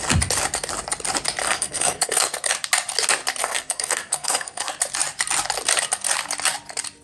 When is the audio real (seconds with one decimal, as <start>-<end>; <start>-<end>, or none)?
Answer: 0.0-1.4; 2.5-3.4; 4.7-7.0